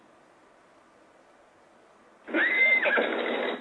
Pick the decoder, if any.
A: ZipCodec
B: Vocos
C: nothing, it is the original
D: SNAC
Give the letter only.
C